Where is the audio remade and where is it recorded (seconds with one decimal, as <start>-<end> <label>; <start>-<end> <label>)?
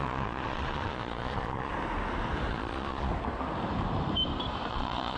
0.0-1.7 remade; 1.7-2.5 recorded; 2.5-3.1 remade; 3.1-4.7 recorded; 4.7-5.2 remade